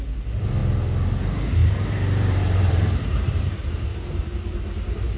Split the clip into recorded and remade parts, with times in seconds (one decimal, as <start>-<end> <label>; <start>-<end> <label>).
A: 0.0-1.6 recorded; 1.6-3.6 remade; 3.6-5.2 recorded